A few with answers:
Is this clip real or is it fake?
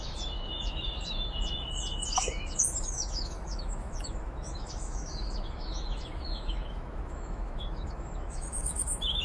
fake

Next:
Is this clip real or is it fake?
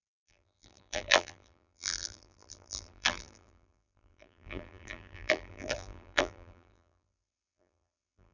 fake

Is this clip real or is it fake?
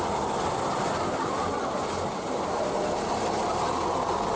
real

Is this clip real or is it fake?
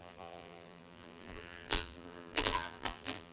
fake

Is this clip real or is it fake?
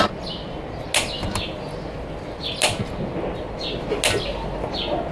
real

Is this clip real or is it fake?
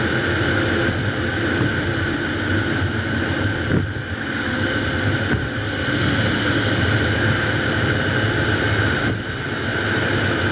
real